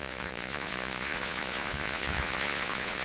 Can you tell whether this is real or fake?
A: fake